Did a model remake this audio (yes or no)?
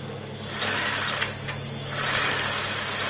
no